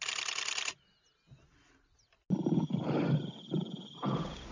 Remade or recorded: recorded